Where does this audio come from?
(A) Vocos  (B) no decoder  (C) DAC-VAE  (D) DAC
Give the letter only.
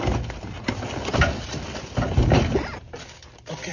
B